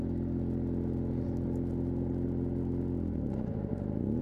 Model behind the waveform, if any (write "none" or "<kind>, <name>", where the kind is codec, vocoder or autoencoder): none